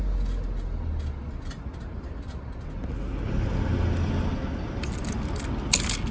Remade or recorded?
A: recorded